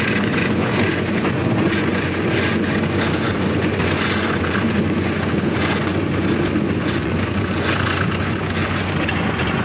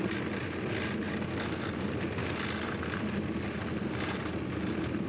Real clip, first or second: second